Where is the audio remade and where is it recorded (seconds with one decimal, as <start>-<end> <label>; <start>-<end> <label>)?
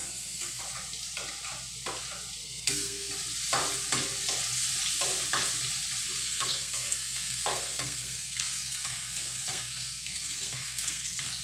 0.0-0.6 remade; 0.6-2.4 recorded; 2.4-3.1 remade; 3.1-6.2 recorded; 6.2-11.4 remade